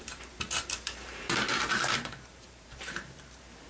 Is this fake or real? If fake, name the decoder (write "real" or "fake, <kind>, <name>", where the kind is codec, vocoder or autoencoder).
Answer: fake, vocoder, BigVGAN v2